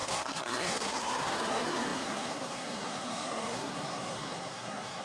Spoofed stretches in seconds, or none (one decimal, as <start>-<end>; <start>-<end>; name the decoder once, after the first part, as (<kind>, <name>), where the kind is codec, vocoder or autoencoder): 0.0-5.0 (codec, SNAC)